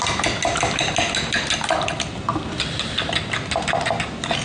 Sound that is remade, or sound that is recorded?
recorded